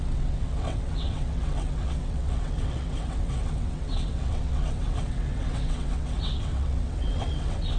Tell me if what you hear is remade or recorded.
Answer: remade